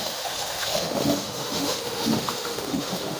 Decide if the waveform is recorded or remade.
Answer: remade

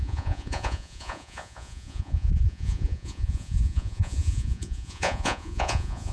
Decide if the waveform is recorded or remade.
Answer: remade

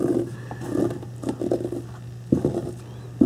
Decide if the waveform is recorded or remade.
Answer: recorded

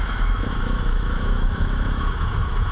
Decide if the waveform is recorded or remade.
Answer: remade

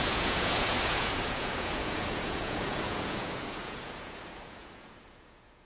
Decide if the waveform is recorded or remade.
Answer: remade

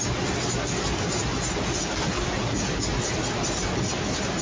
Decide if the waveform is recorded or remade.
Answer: recorded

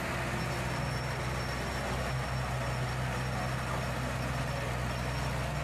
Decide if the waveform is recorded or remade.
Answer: recorded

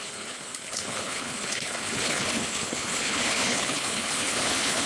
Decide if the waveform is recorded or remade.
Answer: remade